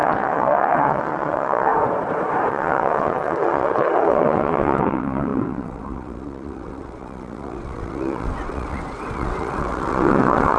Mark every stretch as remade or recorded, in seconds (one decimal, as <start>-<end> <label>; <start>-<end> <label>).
0.0-1.7 remade; 1.7-2.5 recorded; 2.5-10.6 remade